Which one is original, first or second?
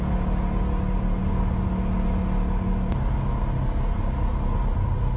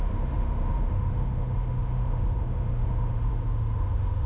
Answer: first